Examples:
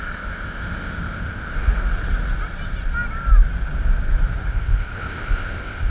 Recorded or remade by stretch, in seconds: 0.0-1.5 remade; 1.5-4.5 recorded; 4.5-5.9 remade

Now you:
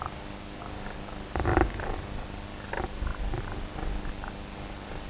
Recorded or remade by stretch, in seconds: 0.0-5.1 recorded

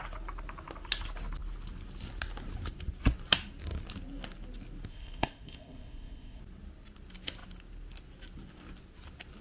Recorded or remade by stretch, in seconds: 0.0-4.9 recorded; 4.9-6.4 remade; 6.4-9.4 recorded